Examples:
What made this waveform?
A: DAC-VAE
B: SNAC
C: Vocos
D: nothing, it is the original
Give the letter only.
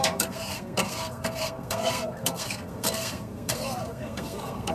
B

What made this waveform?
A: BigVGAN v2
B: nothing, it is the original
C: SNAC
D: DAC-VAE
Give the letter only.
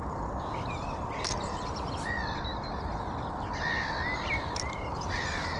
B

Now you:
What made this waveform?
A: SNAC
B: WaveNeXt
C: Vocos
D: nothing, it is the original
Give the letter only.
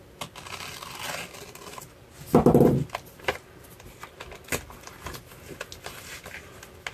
D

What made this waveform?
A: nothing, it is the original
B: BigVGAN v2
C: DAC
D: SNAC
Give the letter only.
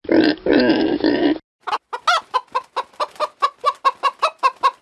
A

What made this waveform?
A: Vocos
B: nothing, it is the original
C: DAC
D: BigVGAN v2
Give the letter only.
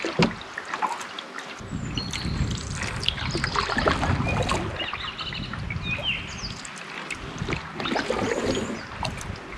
B